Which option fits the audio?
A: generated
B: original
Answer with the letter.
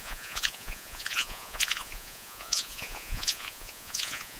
A